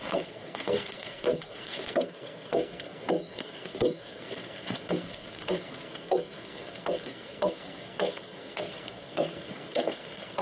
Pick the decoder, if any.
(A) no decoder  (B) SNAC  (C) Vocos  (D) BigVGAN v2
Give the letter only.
B